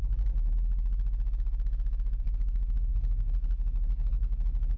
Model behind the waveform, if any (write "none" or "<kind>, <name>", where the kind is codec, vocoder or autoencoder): none